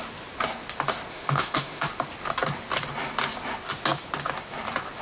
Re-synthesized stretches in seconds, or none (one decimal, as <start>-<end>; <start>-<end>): 1.1-1.8